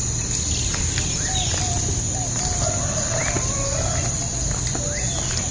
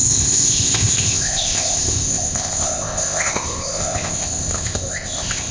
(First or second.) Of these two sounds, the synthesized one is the second